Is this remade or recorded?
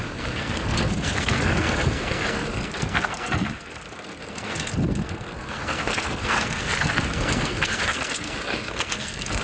remade